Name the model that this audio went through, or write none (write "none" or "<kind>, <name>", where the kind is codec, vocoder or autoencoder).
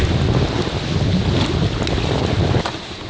none